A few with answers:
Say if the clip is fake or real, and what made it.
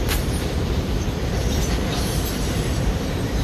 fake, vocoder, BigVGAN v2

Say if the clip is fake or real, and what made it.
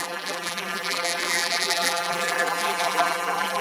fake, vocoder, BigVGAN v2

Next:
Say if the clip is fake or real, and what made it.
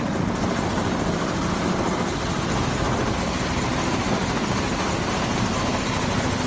real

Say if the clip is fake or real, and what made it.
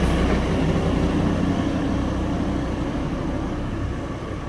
real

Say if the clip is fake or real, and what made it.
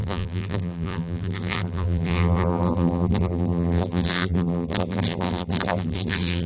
fake, vocoder, BigVGAN v2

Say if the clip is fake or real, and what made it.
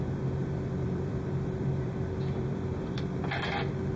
fake, vocoder, BigVGAN v2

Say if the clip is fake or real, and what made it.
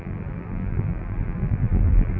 fake, vocoder, BigVGAN v2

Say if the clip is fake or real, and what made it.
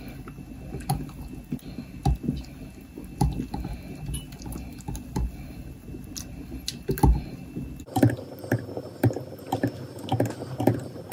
real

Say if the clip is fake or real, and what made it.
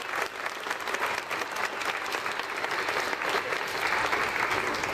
real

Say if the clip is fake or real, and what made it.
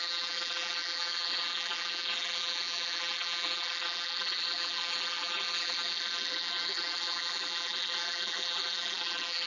fake, vocoder, BigVGAN v2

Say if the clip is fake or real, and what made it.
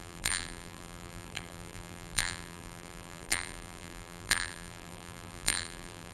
fake, vocoder, BigVGAN v2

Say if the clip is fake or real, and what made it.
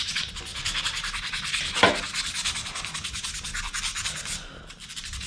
real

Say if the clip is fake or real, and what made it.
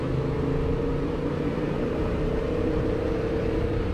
fake, vocoder, BigVGAN v2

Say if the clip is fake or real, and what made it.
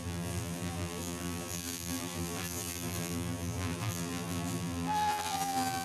fake, vocoder, BigVGAN v2